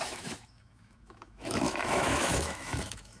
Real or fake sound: fake